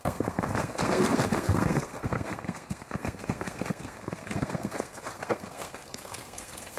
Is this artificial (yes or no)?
yes